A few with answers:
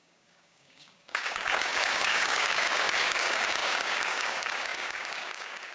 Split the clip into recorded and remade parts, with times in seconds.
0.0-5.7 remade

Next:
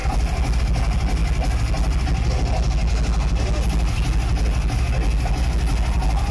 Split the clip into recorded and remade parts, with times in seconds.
0.0-6.3 recorded

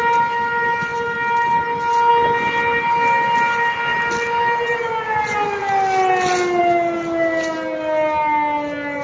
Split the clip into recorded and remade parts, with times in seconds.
0.0-9.0 recorded